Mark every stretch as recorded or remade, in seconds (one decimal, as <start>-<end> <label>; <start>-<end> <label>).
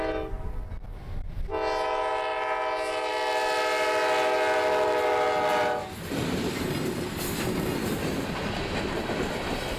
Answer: 0.0-9.8 recorded